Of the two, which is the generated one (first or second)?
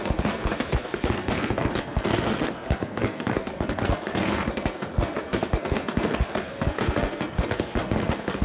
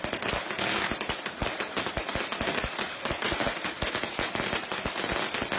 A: first